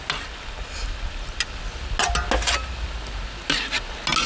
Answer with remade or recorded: recorded